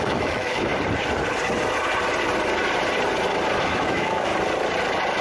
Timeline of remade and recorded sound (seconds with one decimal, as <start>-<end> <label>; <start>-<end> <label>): 0.0-0.7 remade; 0.7-3.6 recorded; 3.6-4.3 remade; 4.3-5.2 recorded

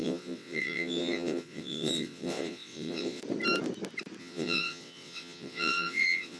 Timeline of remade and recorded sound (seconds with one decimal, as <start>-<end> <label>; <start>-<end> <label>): 0.0-3.2 remade; 3.2-4.2 recorded; 4.2-6.4 remade

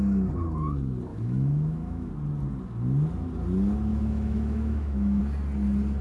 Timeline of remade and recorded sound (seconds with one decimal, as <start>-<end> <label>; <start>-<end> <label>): 0.0-1.1 recorded; 1.1-2.1 remade; 2.1-3.9 recorded; 3.9-5.2 remade; 5.2-6.0 recorded

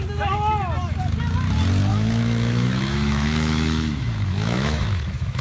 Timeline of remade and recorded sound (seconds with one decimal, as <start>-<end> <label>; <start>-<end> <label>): 0.0-1.9 recorded; 1.9-5.4 remade

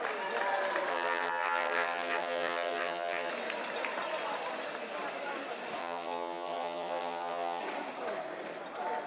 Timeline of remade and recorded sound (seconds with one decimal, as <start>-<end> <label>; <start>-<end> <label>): 0.0-0.9 recorded; 0.9-3.3 remade; 3.3-5.8 recorded; 5.8-7.6 remade; 7.6-9.1 recorded

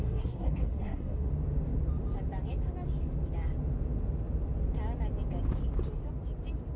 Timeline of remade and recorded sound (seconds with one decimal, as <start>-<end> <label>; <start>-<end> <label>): 0.0-1.3 remade; 1.3-6.8 recorded

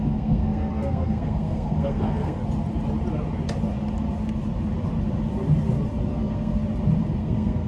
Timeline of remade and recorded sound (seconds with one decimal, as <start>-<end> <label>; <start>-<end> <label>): 0.0-2.4 remade; 2.4-6.1 recorded; 6.1-6.5 remade; 6.5-7.2 recorded; 7.2-7.7 remade

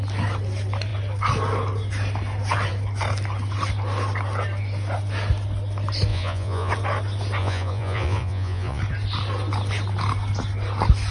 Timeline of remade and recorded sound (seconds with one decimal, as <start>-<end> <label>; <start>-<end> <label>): 0.0-6.1 recorded; 6.1-6.7 remade; 6.7-7.4 recorded; 7.4-8.8 remade; 8.8-11.1 recorded